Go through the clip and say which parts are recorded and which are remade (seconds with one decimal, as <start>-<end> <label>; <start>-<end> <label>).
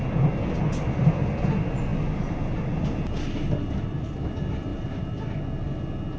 0.0-6.2 recorded